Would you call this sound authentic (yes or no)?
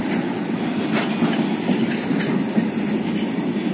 yes